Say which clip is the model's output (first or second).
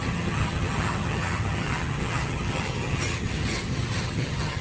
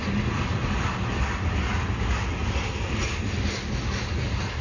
first